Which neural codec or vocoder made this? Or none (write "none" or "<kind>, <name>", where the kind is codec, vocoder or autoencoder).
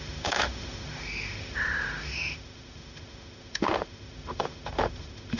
autoencoder, DAC-VAE